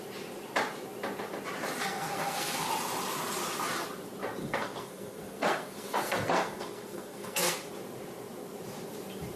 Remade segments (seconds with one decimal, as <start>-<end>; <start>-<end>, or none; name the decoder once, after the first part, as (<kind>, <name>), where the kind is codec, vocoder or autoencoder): 1.8-2.7 (codec, SNAC); 4.4-7.7